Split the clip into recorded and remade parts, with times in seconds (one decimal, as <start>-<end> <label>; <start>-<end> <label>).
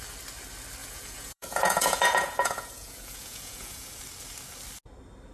0.0-0.8 recorded; 0.8-4.0 remade; 4.0-5.3 recorded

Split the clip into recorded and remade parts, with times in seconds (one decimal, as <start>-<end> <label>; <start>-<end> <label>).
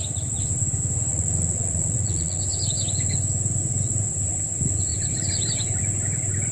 0.0-1.1 recorded; 1.1-2.4 remade; 2.4-6.5 recorded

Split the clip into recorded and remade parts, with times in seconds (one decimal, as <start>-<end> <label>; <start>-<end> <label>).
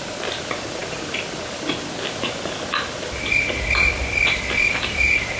0.0-5.4 recorded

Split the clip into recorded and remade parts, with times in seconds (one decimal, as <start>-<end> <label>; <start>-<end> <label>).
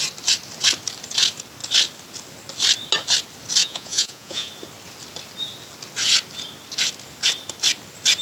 0.0-3.6 recorded; 3.6-4.5 remade; 4.5-8.2 recorded